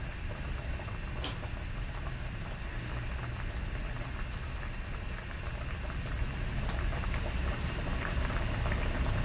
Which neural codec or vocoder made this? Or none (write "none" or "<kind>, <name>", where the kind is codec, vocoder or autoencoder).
none